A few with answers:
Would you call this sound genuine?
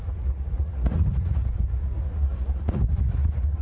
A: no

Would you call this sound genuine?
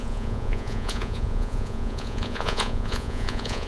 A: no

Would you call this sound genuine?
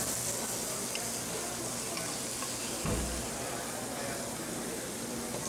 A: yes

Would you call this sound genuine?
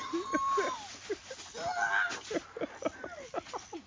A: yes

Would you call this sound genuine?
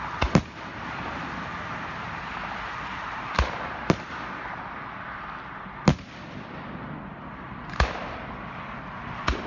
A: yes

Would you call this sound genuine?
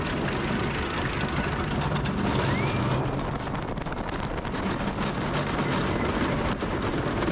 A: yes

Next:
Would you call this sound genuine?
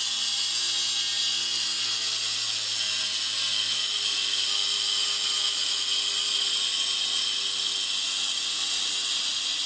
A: yes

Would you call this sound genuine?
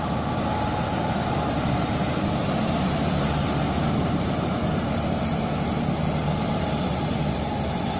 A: no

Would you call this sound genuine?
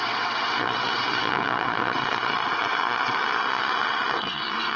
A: no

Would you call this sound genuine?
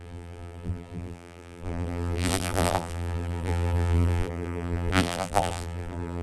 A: no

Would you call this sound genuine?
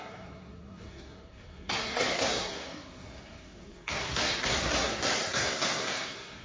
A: no